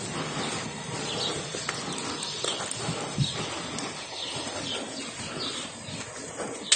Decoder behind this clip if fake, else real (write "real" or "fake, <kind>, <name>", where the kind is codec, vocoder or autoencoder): real